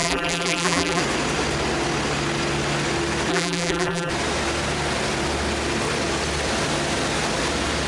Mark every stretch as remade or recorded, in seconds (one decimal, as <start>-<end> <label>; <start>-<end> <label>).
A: 0.0-1.0 remade; 1.0-3.3 recorded; 3.3-4.1 remade; 4.1-7.9 recorded